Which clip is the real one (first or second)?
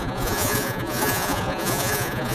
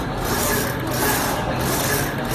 second